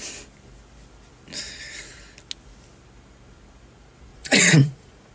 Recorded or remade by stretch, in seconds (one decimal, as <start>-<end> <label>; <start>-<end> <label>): 0.0-4.1 recorded; 4.1-5.1 remade